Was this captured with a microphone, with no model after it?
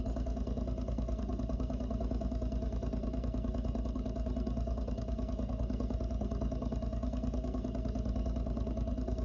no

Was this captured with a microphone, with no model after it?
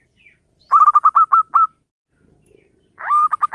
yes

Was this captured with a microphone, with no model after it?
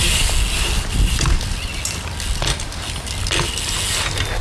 yes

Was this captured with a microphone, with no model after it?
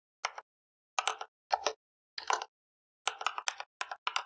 yes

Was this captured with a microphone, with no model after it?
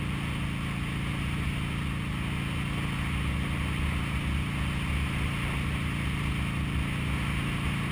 yes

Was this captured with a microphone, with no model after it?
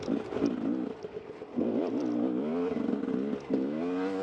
yes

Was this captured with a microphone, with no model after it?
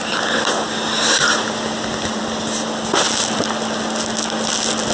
yes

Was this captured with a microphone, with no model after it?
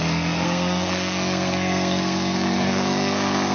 no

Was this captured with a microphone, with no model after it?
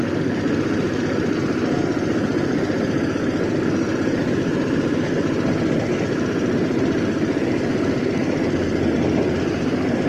yes